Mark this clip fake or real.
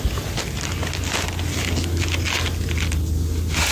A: real